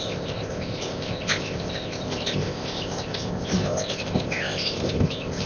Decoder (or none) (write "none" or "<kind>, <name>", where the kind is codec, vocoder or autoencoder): codec, ZipCodec